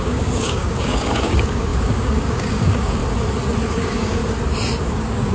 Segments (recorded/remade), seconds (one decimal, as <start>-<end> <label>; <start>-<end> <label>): 0.0-3.0 remade; 3.0-3.7 recorded; 3.7-4.2 remade; 4.2-4.8 recorded; 4.8-5.3 remade